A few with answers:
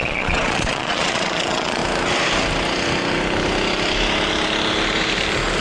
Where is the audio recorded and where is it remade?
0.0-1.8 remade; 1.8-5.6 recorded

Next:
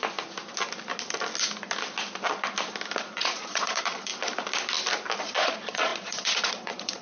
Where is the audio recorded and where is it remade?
0.0-3.0 recorded; 3.0-4.1 remade; 4.1-5.2 recorded; 5.2-7.0 remade

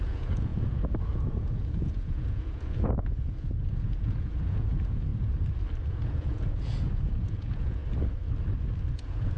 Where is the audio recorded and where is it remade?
0.0-5.1 remade; 5.1-5.9 recorded; 5.9-7.8 remade; 7.8-8.9 recorded; 8.9-9.4 remade

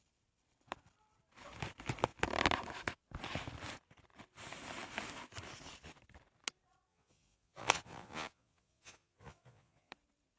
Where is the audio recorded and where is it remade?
0.0-6.9 recorded; 6.9-9.9 remade; 9.9-10.4 recorded

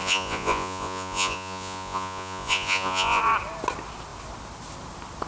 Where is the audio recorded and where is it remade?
0.0-3.2 remade; 3.2-5.3 recorded